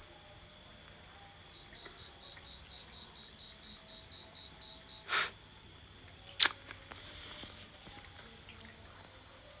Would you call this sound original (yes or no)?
yes